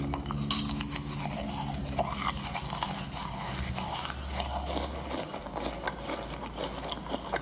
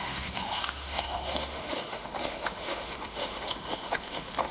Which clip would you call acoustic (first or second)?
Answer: first